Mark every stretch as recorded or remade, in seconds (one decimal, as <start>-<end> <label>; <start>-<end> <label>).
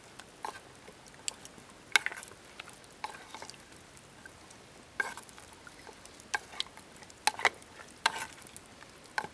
0.0-9.3 recorded